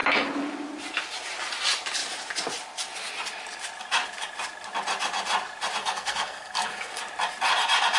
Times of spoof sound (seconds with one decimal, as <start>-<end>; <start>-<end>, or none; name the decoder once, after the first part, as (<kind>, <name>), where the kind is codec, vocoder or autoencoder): 5.8-7.0 (codec, SNAC)